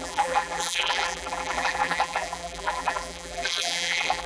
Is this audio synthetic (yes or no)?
yes